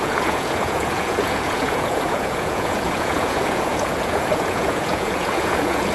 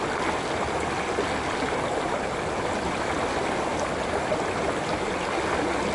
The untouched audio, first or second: second